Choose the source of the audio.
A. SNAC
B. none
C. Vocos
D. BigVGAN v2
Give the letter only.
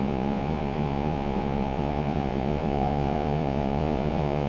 C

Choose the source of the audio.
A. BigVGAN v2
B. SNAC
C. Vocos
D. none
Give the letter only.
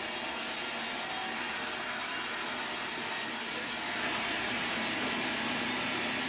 D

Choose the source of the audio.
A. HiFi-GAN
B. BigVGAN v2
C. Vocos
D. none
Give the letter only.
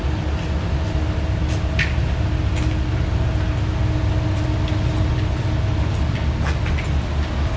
D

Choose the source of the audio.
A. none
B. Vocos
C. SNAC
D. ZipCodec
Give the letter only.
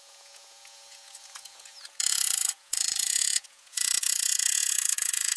B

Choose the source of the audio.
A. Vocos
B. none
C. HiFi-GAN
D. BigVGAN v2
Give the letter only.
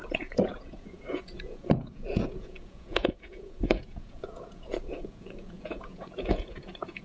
A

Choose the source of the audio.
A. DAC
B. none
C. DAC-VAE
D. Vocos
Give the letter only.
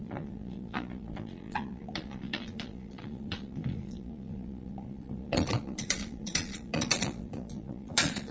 D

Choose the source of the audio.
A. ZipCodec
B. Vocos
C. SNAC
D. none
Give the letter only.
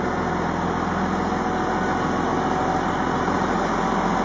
D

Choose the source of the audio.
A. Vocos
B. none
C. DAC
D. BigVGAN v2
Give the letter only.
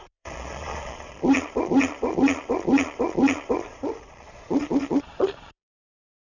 A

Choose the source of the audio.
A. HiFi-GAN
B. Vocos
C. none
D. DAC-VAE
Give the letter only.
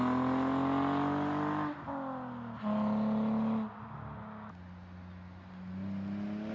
C